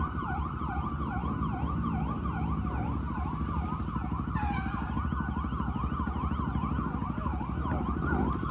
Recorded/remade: recorded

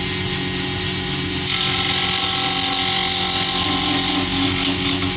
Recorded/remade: recorded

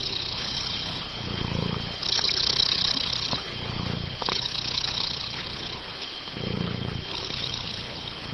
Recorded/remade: remade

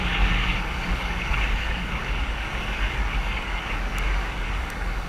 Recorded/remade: remade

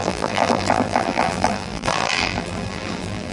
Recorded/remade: remade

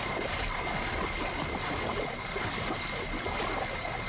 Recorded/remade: recorded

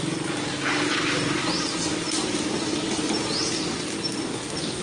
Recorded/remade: recorded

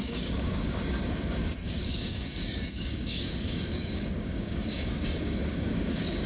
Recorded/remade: remade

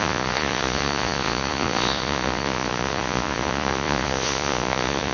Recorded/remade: remade